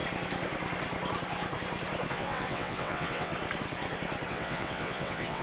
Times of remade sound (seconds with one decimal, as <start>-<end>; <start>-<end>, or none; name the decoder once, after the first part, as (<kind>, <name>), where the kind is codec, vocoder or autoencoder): 2.1-3.3 (vocoder, WaveNeXt); 4.3-5.4